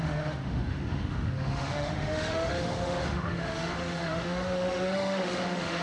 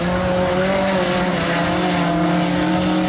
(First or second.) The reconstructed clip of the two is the first